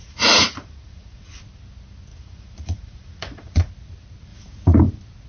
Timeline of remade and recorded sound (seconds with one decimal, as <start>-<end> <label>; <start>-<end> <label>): 0.0-1.4 remade; 1.4-2.1 recorded; 2.1-3.7 remade; 3.7-4.3 recorded; 4.3-4.8 remade; 4.8-5.3 recorded